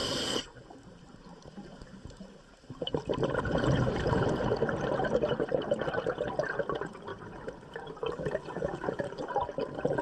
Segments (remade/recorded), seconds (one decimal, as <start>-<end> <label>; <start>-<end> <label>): 0.0-4.3 remade; 4.3-7.1 recorded; 7.1-8.2 remade; 8.2-10.0 recorded